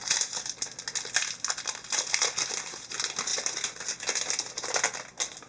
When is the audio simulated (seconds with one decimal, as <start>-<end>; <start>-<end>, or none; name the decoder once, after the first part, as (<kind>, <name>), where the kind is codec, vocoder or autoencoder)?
none